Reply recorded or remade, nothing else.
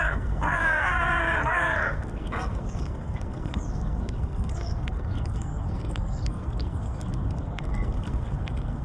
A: remade